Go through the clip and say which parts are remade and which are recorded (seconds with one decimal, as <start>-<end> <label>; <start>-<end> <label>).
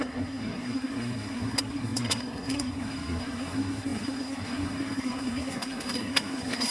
0.0-6.7 remade